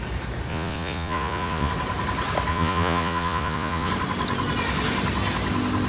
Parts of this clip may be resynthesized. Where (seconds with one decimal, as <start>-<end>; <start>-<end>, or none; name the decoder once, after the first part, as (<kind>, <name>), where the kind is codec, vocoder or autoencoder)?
0.5-1.7 (vocoder, Vocos); 2.5-3.9